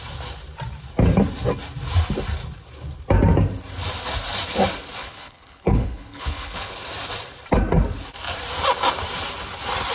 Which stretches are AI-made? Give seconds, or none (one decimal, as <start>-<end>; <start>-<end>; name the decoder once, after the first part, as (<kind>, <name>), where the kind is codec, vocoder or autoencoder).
5.0-6.7 (codec, HILCodec)